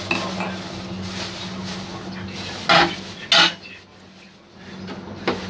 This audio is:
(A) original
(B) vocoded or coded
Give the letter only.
A